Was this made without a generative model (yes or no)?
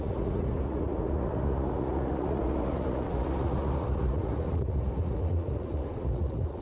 no